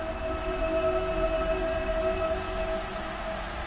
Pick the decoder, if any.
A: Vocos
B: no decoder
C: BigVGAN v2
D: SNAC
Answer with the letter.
B